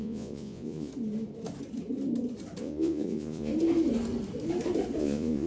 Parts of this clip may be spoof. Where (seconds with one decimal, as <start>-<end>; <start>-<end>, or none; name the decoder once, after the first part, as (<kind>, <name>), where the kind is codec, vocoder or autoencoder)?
0.0-0.9 (vocoder, Vocos); 2.6-3.5; 5.0-5.5

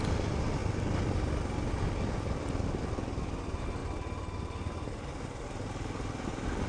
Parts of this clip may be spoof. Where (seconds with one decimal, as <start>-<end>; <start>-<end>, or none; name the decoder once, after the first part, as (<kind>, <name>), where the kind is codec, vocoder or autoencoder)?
none

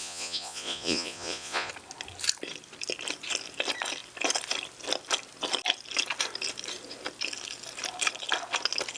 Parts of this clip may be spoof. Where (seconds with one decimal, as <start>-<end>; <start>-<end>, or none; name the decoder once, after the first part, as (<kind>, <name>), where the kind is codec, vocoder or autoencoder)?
0.0-1.7 (vocoder, Vocos)

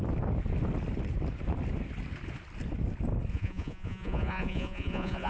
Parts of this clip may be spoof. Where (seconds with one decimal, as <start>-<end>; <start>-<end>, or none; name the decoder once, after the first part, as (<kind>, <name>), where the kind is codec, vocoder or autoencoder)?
3.3-5.3 (vocoder, Vocos)